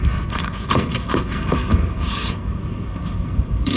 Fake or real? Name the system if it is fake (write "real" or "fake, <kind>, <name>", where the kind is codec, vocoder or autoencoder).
fake, codec, SNAC